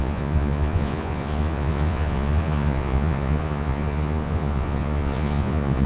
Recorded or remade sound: remade